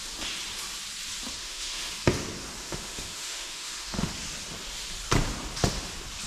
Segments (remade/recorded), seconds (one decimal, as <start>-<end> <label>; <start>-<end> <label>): 0.0-1.4 recorded; 1.4-1.9 remade; 1.9-2.6 recorded; 2.6-4.1 remade; 4.1-6.3 recorded